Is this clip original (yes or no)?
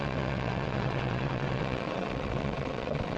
no